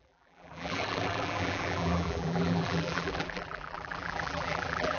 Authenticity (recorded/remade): remade